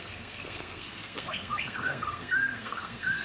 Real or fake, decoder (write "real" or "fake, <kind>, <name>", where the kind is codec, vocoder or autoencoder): fake, codec, SNAC